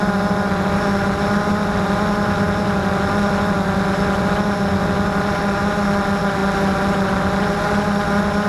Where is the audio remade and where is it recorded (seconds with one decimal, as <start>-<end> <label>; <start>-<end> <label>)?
0.0-8.5 recorded